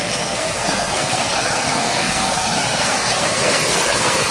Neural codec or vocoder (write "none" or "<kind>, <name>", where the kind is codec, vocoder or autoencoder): codec, SNAC